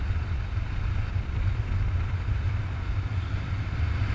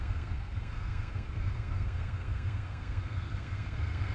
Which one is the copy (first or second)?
second